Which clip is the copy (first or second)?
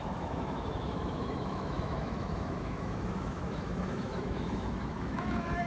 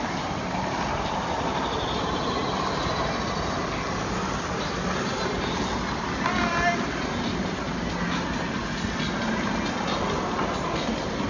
first